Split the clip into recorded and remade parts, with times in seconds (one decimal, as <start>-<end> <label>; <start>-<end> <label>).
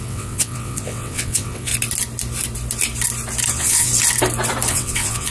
0.0-1.7 remade; 1.7-3.5 recorded; 3.5-3.9 remade; 3.9-4.7 recorded; 4.7-5.3 remade